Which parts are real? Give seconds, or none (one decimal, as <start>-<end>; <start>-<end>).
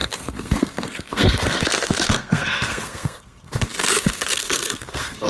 none